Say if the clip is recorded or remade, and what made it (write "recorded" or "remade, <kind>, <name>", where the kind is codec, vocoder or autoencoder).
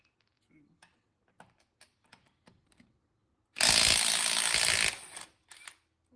recorded